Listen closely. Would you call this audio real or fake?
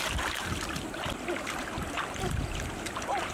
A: real